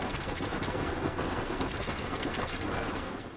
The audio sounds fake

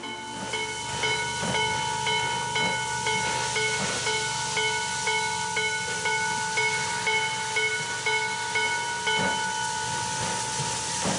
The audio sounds real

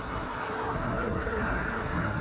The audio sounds fake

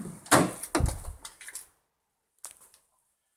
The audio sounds real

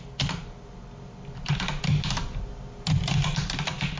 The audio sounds real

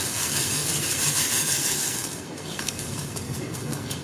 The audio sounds fake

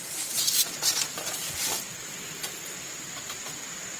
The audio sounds real